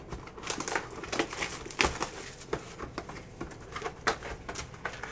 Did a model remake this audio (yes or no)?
no